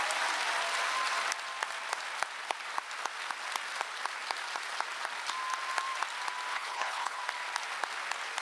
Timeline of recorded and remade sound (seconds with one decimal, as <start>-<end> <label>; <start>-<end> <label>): 0.0-6.5 recorded; 6.5-7.2 remade; 7.2-8.4 recorded